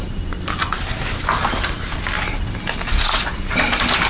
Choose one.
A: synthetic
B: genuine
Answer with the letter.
B